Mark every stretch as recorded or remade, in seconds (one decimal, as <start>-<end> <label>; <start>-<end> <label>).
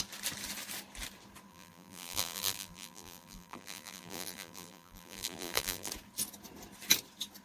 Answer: 0.0-1.5 recorded; 1.5-5.9 remade; 5.9-7.4 recorded